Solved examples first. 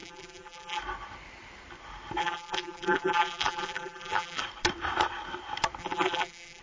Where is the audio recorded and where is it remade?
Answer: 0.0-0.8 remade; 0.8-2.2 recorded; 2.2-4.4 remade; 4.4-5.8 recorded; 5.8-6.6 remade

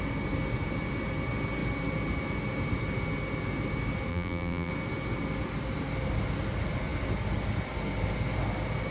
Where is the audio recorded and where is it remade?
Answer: 0.0-4.1 recorded; 4.1-4.7 remade; 4.7-8.9 recorded

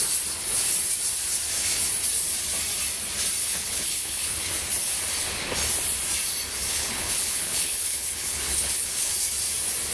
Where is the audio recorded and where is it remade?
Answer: 0.0-3.4 recorded; 3.4-4.5 remade; 4.5-6.7 recorded; 6.7-9.1 remade; 9.1-9.9 recorded

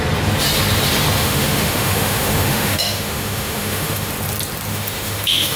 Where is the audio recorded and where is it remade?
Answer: 0.0-1.2 recorded; 1.2-4.1 remade; 4.1-4.7 recorded; 4.7-5.6 remade

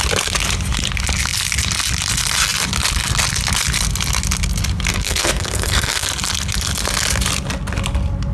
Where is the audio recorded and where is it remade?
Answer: 0.0-4.9 recorded; 4.9-6.1 remade; 6.1-8.3 recorded

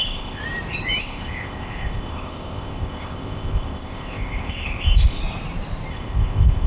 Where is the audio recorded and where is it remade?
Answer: 0.0-0.4 remade; 0.4-1.0 recorded; 1.0-5.2 remade; 5.2-5.9 recorded; 5.9-6.7 remade

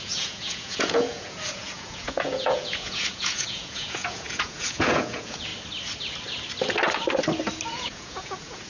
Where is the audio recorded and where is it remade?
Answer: 0.0-5.5 remade; 5.5-7.7 recorded; 7.7-8.7 remade

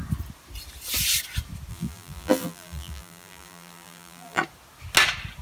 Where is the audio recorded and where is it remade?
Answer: 0.0-1.7 recorded; 1.7-4.4 remade; 4.4-5.4 recorded